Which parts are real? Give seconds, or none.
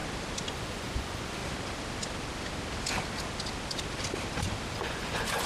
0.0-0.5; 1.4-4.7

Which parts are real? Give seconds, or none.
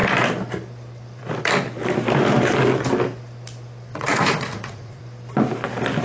0.0-3.9; 5.0-6.0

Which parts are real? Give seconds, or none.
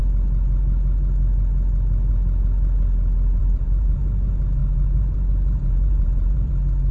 0.0-3.4; 4.0-4.6; 6.5-6.9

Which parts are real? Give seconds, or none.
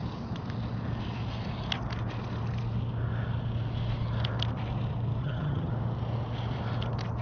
0.0-5.2; 5.7-7.2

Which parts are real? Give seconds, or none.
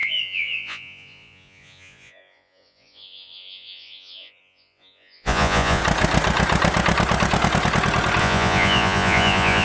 5.8-8.2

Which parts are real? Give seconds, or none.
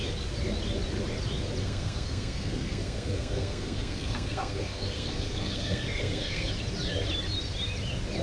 0.0-1.6; 6.5-8.2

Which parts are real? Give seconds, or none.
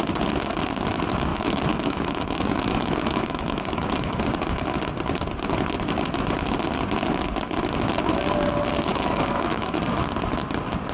0.0-1.3; 4.2-8.9; 9.8-10.9